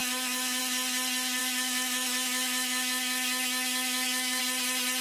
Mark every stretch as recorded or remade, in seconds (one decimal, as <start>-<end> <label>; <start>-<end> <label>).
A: 0.0-0.6 remade; 0.6-1.4 recorded; 1.4-4.4 remade; 4.4-5.0 recorded